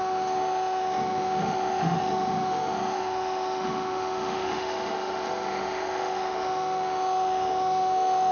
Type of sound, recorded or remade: remade